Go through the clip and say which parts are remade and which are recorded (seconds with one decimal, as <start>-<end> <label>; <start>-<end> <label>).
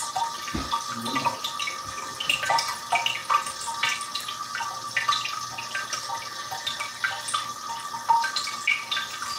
0.0-9.4 recorded